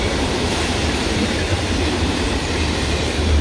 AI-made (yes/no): yes